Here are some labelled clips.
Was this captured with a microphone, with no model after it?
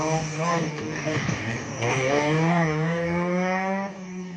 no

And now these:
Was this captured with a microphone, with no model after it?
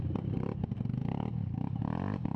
yes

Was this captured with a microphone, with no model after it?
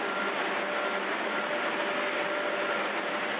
yes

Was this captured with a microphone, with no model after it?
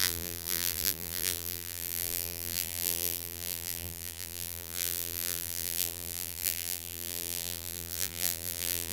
no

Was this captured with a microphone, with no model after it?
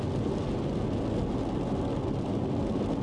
yes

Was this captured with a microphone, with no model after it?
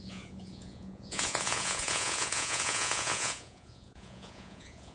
no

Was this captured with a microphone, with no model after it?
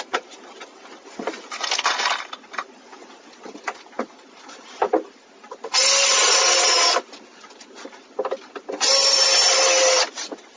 yes